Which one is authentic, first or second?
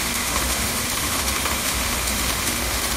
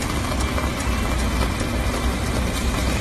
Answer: second